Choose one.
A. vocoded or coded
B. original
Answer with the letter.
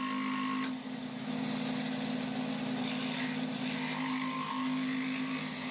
B